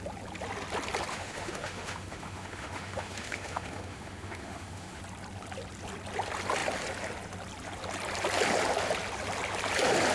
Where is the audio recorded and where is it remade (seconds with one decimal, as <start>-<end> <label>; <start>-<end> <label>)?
0.0-1.1 recorded; 1.1-5.0 remade; 5.0-10.1 recorded

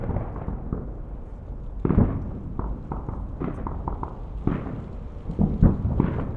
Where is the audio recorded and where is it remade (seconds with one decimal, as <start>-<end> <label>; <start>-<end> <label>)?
0.0-6.4 recorded

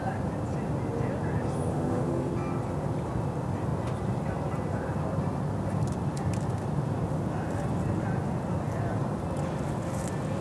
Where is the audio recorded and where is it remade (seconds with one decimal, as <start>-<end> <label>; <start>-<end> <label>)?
0.0-1.7 recorded; 1.7-2.3 remade; 2.3-10.4 recorded

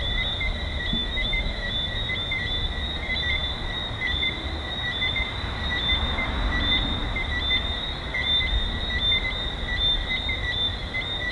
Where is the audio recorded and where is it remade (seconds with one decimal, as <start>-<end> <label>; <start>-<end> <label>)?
0.0-1.0 recorded; 1.0-1.7 remade; 1.7-11.3 recorded

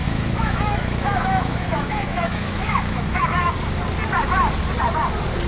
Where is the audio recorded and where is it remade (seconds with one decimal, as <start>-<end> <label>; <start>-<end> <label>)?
0.0-3.2 remade; 3.2-5.5 recorded

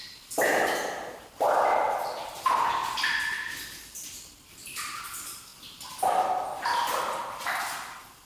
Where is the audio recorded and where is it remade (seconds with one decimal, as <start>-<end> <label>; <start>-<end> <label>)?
0.0-8.2 recorded

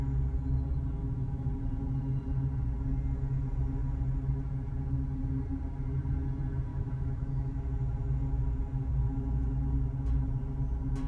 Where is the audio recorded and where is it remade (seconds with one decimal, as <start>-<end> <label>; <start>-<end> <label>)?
0.0-1.0 recorded; 1.0-1.5 remade; 1.5-6.7 recorded; 6.7-7.6 remade; 7.6-11.1 recorded